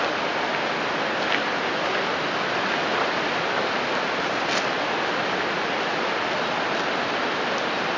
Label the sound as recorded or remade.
recorded